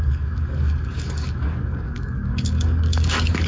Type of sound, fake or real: fake